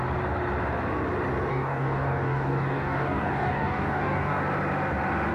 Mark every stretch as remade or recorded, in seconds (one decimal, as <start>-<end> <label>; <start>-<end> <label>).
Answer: 0.0-1.5 recorded; 1.5-4.4 remade; 4.4-5.3 recorded